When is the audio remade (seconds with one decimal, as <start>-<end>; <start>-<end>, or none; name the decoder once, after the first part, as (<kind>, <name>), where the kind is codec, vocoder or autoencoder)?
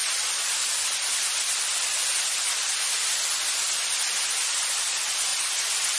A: none